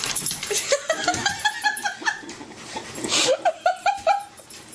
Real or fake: fake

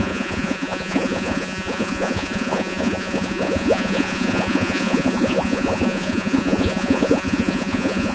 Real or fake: fake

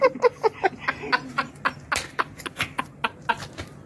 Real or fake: real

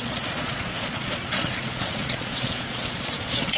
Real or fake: fake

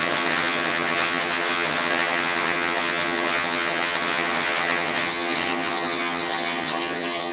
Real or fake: fake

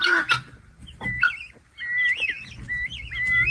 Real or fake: real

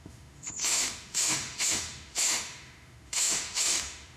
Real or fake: fake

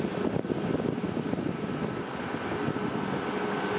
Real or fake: real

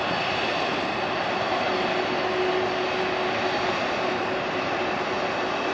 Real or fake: real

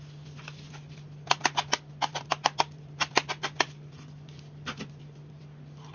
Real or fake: real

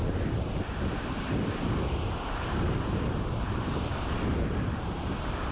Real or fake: fake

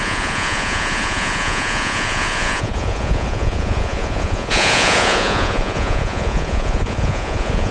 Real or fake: fake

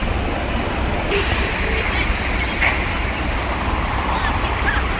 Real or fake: real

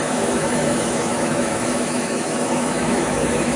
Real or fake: fake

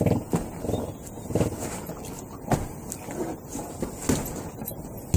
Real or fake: real